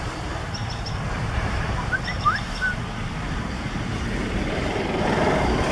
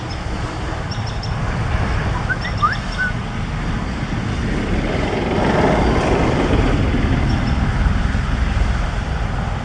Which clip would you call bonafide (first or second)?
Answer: second